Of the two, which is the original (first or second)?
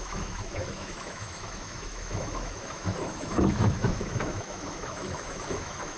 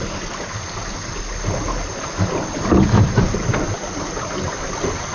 second